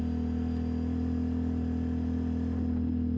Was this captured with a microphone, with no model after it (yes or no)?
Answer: yes